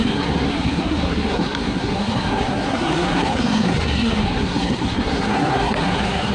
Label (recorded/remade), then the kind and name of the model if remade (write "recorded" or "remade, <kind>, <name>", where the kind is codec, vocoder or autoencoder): remade, codec, SNAC